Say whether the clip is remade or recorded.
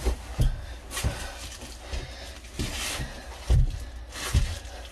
recorded